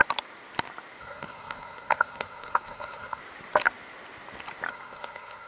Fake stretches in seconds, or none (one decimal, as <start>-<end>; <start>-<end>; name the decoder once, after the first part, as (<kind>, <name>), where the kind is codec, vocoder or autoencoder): 1.0-3.2 (codec, SNAC); 4.7-5.5